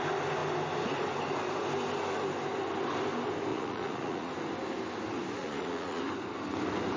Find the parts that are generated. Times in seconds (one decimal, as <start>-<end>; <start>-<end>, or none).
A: 3.5-4.3; 5.4-6.0